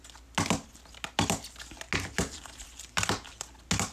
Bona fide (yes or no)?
yes